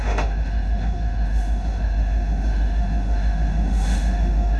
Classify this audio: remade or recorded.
remade